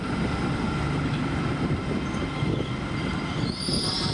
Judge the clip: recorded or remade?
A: recorded